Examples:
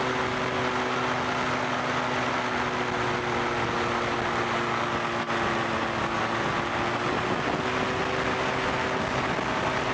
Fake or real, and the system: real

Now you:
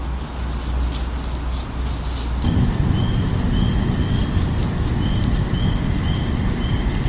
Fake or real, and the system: real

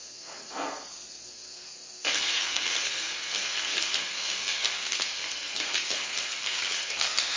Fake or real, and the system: fake, codec, SNAC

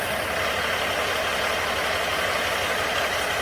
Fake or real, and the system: real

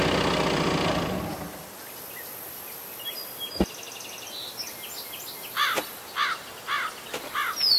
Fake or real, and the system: real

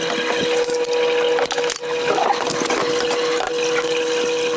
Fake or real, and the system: real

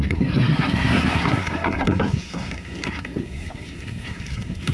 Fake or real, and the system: fake, codec, SNAC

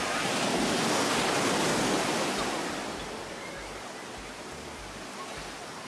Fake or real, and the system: real